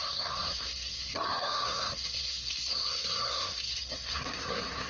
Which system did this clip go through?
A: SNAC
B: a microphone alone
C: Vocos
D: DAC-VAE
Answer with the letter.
A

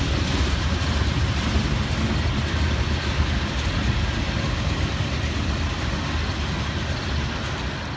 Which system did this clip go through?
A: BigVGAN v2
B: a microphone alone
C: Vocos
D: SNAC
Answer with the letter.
B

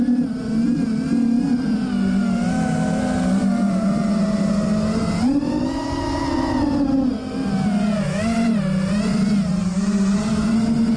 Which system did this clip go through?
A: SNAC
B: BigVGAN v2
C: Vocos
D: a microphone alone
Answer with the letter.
D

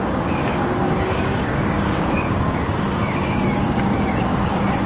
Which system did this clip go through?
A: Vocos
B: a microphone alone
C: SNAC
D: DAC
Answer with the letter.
D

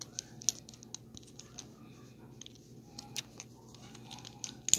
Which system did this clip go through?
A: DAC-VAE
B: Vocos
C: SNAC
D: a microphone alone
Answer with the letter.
D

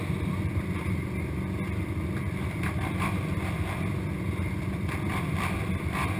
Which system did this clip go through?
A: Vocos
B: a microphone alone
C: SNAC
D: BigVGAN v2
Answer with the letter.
D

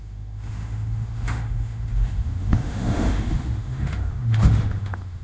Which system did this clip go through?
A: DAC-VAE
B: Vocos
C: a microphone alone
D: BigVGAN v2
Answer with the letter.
A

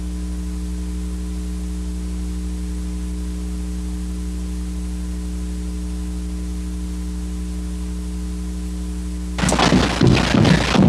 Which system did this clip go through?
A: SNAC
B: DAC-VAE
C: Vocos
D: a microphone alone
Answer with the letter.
D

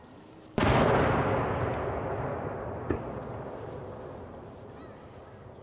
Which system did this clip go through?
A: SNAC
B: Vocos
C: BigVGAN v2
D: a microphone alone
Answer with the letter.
D